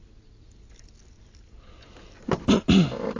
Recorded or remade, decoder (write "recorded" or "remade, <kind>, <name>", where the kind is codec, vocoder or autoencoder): recorded